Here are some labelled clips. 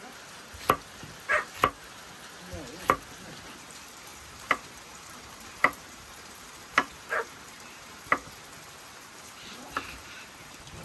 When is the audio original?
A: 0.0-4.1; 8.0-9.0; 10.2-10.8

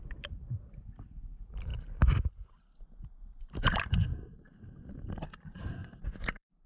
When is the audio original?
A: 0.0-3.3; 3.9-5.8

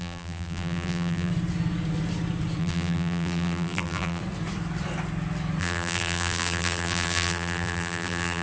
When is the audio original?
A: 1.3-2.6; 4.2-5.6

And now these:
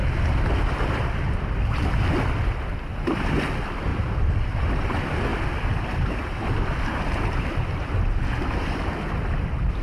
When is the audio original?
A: 1.6-3.9; 4.8-5.3; 7.8-9.8

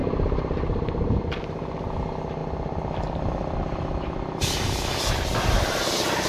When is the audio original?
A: 1.2-6.3